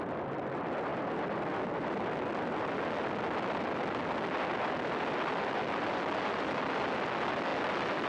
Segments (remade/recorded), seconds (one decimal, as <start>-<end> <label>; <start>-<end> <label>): 0.0-0.9 remade; 0.9-5.8 recorded; 5.8-8.1 remade